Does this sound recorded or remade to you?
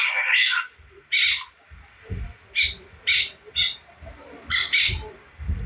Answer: recorded